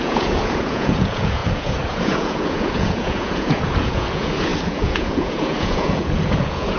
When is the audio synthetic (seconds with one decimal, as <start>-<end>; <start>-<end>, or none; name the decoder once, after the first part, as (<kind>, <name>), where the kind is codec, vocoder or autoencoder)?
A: 0.0-6.8 (vocoder, Vocos)